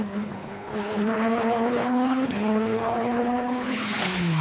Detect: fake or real fake